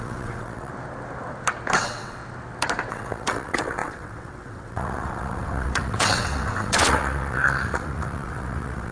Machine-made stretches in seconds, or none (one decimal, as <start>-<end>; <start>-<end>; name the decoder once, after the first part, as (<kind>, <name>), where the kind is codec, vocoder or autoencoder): 0.0-0.7 (vocoder, WaveNeXt); 1.8-2.2; 2.9-8.9